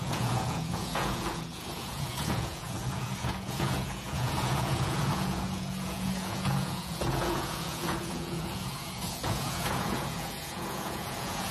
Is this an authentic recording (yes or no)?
no